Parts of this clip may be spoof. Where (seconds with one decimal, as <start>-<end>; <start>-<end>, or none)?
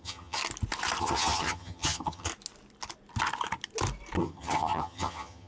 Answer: 0.0-0.4; 1.0-2.3; 4.2-5.5